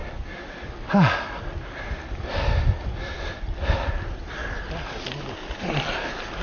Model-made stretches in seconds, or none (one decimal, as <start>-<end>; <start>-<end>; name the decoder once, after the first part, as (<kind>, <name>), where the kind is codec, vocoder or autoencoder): none